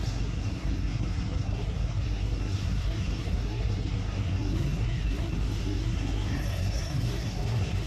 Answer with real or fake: fake